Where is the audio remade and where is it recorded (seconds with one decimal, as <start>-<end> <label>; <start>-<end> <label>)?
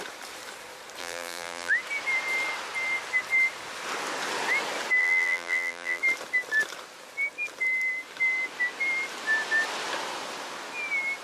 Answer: 0.0-1.0 recorded; 1.0-1.7 remade; 1.7-5.0 recorded; 5.0-6.0 remade; 6.0-11.2 recorded